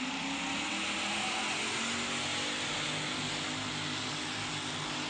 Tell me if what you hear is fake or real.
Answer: real